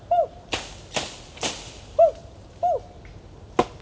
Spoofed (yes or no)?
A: no